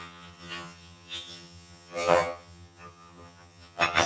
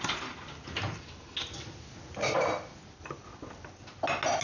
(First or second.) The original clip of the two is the second